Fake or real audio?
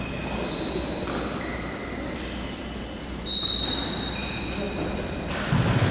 real